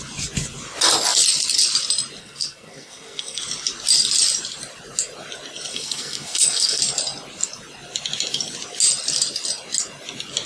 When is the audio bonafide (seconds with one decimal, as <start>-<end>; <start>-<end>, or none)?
0.0-2.2; 3.4-5.7; 6.8-10.5